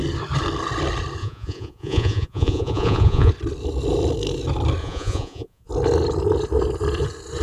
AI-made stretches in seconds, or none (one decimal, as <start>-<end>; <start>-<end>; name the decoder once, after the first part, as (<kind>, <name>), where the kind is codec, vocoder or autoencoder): 1.2-3.3 (vocoder, Vocos); 4.8-5.7